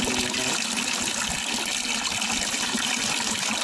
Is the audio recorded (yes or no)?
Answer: yes